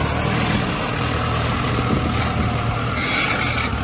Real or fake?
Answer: real